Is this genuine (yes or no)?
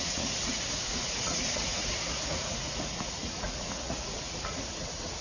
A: no